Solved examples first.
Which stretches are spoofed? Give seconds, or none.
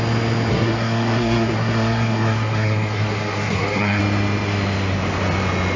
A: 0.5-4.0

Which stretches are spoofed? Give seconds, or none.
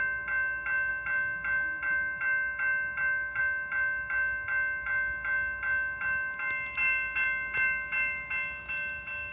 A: none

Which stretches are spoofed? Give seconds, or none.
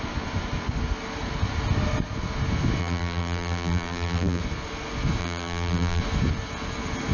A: 2.8-4.4; 5.2-6.0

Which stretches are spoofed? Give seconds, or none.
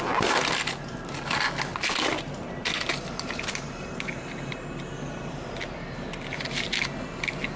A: none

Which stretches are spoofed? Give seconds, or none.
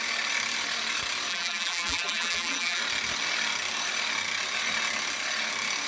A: 1.3-2.8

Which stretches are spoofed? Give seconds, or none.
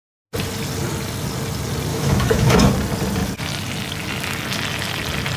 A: 1.9-2.7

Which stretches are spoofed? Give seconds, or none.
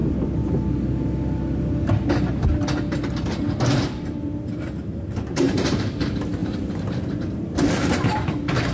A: 4.0-8.7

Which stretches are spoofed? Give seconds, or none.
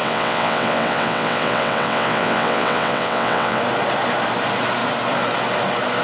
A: 0.0-3.6